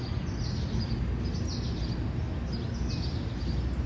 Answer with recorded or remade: recorded